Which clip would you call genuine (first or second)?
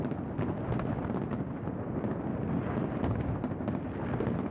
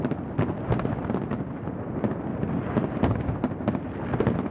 first